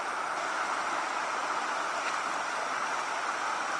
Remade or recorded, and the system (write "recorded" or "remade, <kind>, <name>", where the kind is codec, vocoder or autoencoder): recorded